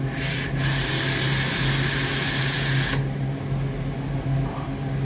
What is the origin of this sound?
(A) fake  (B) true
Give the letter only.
B